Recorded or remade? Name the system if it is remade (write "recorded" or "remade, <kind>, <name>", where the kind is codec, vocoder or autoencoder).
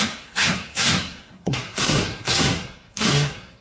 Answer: remade, codec, SNAC